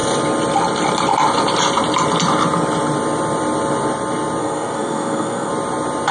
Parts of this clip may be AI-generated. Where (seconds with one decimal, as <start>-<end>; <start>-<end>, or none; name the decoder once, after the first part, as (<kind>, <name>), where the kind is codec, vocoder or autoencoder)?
4.4-5.5 (codec, SNAC)